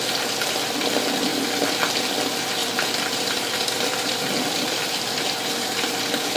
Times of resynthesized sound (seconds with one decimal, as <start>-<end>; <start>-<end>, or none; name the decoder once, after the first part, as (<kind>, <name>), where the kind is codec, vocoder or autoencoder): 2.6-4.8 (vocoder, BigVGAN v2)